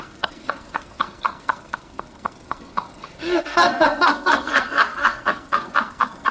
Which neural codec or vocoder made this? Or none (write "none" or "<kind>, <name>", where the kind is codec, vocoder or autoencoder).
codec, SNAC